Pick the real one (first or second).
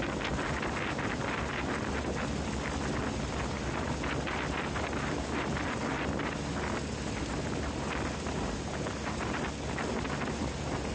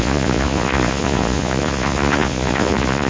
first